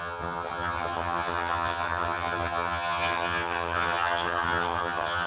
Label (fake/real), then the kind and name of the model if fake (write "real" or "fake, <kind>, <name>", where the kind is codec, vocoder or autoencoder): fake, vocoder, HiFi-GAN